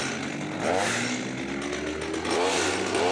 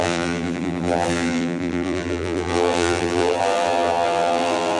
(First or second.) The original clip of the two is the first